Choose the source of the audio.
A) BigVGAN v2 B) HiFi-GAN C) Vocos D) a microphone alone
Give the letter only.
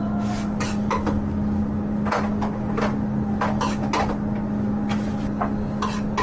D